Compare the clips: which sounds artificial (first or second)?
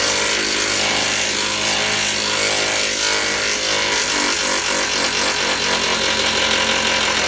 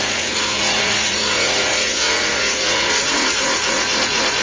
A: second